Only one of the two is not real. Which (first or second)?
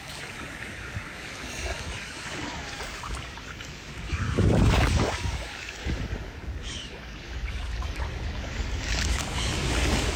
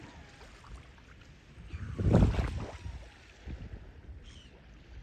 first